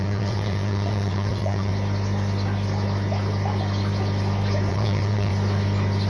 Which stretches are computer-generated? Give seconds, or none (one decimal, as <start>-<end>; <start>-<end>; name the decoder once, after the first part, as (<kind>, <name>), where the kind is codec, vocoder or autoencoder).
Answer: 0.0-1.7 (vocoder, WaveNeXt); 4.7-5.3